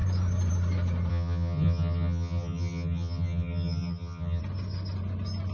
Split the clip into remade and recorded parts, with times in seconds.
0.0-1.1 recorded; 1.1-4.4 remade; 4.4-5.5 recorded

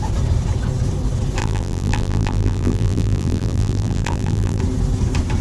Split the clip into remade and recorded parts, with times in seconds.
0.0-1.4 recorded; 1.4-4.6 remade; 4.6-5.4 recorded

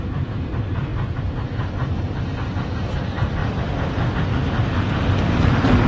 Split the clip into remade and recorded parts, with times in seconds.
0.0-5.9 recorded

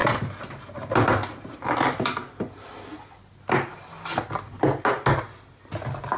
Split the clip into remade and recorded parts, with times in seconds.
0.0-6.2 recorded

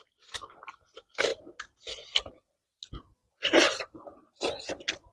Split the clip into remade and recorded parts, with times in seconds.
0.0-5.1 recorded

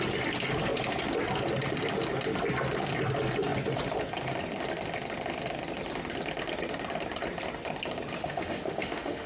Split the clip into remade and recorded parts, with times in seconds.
0.0-8.2 recorded; 8.2-9.3 remade

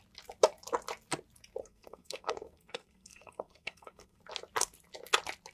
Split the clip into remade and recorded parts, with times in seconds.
0.0-1.6 recorded; 1.6-4.2 remade; 4.2-5.5 recorded

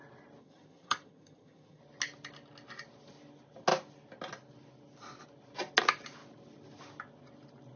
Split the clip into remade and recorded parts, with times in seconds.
0.0-0.4 recorded; 0.4-1.8 remade; 1.8-7.8 recorded